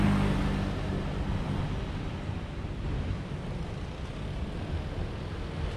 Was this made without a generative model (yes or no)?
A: yes